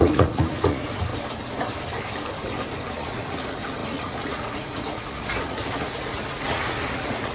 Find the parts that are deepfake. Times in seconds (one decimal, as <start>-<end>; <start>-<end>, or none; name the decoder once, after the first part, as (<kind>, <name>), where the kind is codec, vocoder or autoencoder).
0.0-1.1 (vocoder, Vocos); 2.9-7.3